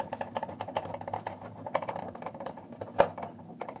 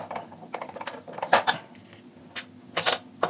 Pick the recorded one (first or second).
second